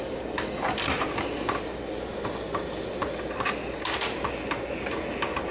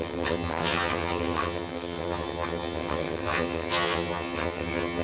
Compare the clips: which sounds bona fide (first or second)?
first